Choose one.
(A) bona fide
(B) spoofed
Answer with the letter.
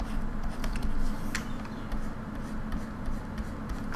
A